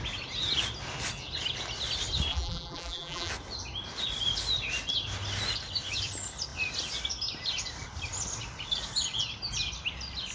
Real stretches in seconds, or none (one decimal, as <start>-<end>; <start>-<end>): 0.0-2.3; 3.3-10.3